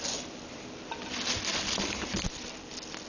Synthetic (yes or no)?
no